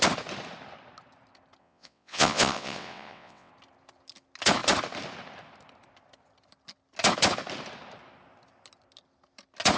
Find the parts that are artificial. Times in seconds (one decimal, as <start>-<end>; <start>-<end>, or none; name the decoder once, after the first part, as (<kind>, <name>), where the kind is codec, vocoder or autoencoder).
1.6-3.5 (vocoder, WaveNeXt)